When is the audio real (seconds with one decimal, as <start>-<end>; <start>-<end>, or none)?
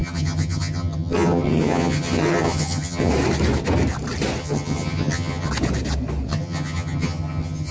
3.1-4.4; 5.5-6.3